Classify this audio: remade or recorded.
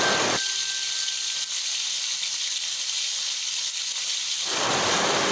recorded